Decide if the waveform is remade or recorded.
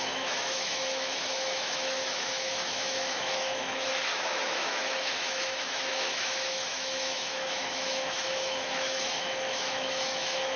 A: remade